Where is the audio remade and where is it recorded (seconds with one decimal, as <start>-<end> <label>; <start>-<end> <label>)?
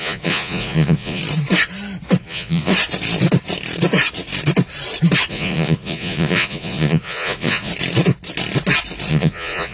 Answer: 0.0-1.2 remade; 1.2-2.2 recorded; 2.2-2.7 remade; 2.7-5.3 recorded; 5.3-7.7 remade; 7.7-9.1 recorded; 9.1-9.7 remade